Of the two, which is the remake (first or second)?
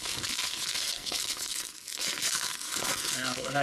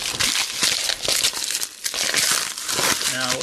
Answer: first